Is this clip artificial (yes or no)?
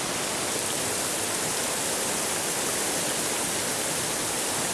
no